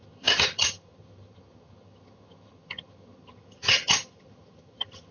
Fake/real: fake